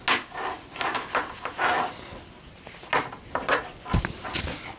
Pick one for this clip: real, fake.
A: real